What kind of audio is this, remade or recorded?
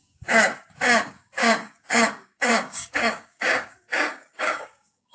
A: remade